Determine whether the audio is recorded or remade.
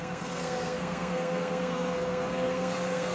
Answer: remade